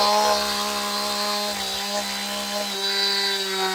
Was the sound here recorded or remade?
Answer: recorded